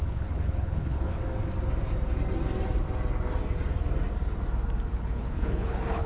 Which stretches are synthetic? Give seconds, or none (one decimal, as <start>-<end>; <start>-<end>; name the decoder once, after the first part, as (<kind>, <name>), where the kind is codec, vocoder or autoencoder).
0.0-1.2 (codec, HILCodec); 4.9-6.1